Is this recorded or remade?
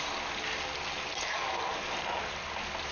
recorded